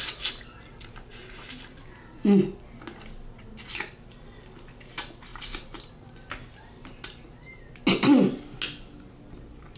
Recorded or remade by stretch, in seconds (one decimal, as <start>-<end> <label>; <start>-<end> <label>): 0.0-5.3 recorded; 5.3-6.1 remade; 6.1-9.8 recorded